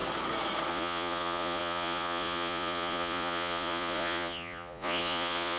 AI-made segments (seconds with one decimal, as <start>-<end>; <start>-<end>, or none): 0.7-5.6